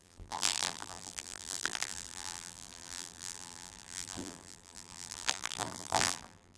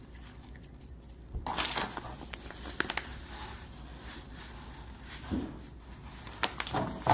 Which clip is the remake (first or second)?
first